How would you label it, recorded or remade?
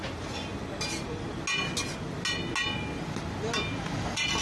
recorded